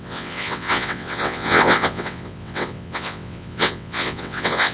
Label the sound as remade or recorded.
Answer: remade